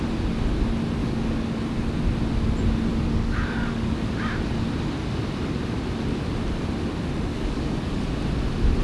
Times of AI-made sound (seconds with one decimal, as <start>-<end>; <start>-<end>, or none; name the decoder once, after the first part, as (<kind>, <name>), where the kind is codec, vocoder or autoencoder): 1.0-1.6 (codec, DAC); 2.9-4.1; 7.3-7.9